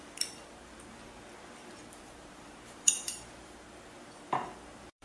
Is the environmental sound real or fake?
fake